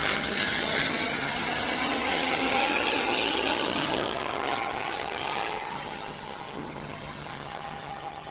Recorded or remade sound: remade